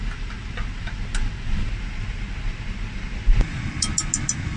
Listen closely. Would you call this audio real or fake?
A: real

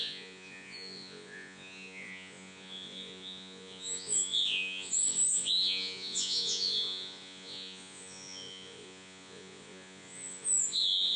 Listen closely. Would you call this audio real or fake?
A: fake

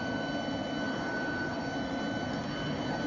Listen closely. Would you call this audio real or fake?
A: real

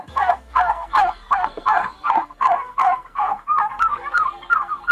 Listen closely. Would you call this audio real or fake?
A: fake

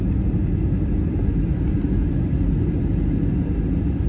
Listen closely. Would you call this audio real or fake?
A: real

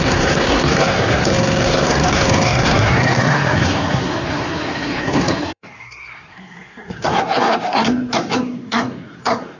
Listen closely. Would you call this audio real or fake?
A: fake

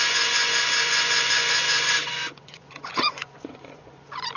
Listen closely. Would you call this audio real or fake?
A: fake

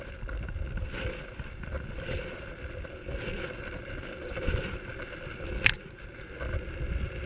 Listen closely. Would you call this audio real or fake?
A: fake